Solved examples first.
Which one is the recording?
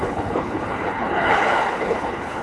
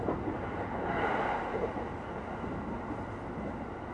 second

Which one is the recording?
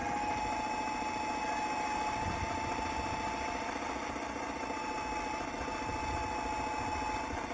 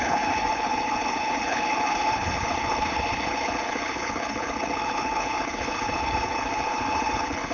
first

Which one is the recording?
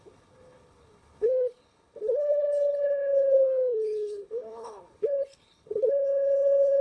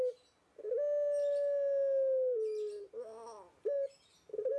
second